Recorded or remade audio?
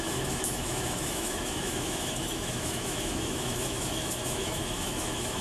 remade